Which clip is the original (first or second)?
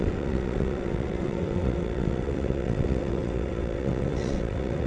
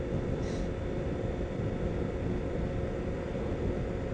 second